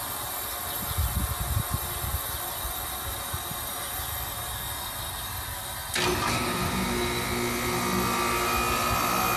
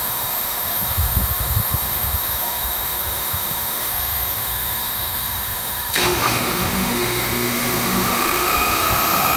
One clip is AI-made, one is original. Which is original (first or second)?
first